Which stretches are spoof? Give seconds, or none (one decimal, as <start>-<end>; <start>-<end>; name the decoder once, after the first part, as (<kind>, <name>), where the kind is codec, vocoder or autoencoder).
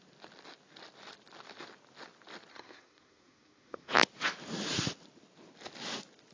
2.5-3.9 (codec, SNAC)